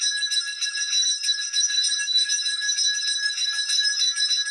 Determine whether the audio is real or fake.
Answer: fake